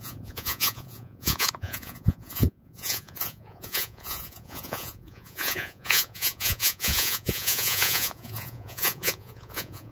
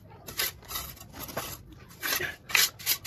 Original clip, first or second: second